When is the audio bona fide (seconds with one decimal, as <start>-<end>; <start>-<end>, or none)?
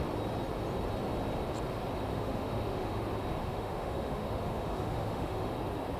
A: 0.0-2.1; 3.0-3.4; 5.5-6.0